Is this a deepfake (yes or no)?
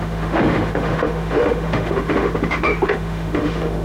yes